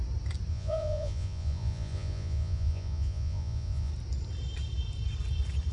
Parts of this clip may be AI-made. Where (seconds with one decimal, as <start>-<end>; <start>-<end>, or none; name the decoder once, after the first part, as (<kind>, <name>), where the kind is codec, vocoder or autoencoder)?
0.5-3.9 (vocoder, Vocos)